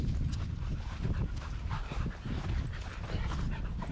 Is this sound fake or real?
real